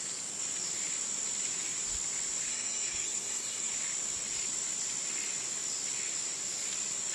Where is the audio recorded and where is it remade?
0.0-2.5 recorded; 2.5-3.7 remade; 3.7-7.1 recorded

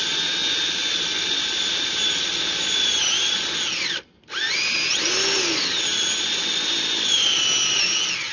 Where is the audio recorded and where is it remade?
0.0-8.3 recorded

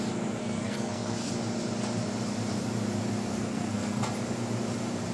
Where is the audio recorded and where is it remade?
0.0-0.4 recorded; 0.4-1.3 remade; 1.3-3.3 recorded; 3.3-4.1 remade; 4.1-5.1 recorded